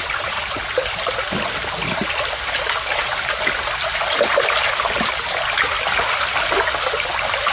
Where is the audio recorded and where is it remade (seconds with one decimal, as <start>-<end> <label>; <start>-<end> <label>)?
0.0-0.6 remade; 0.6-7.5 recorded